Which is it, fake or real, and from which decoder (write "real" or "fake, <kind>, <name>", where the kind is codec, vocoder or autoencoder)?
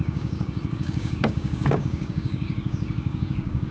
fake, codec, DAC